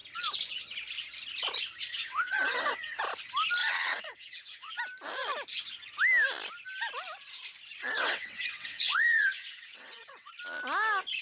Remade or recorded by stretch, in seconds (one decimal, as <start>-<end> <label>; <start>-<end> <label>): 0.0-1.9 recorded; 1.9-3.0 remade; 3.0-3.6 recorded; 3.6-4.7 remade; 4.7-7.8 recorded; 7.8-10.3 remade; 10.3-11.2 recorded